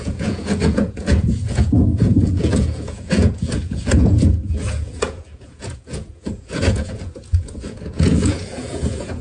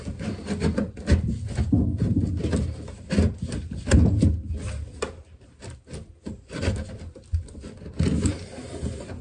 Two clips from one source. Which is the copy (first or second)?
first